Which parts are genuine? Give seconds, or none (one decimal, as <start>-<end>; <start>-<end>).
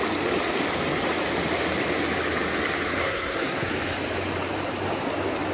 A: 0.0-3.0; 3.7-5.5